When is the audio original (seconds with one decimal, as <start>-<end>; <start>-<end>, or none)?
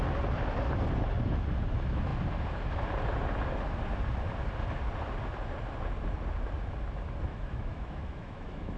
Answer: 0.0-7.3